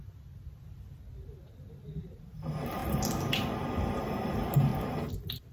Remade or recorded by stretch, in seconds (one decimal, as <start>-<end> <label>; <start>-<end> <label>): 0.0-2.8 remade; 2.8-4.0 recorded; 4.0-4.7 remade; 4.7-5.5 recorded